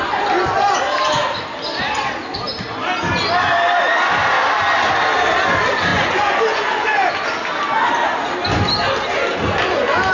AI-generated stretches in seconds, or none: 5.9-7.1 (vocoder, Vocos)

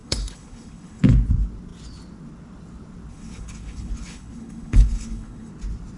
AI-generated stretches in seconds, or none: 0.0-1.0 (codec, HILCodec); 3.1-5.5

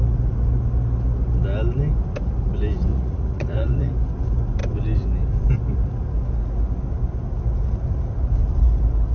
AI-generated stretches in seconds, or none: 2.9-3.9 (vocoder, Vocos)

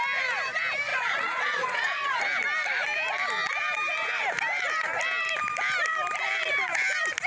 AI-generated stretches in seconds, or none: 0.9-2.2 (vocoder, Vocos)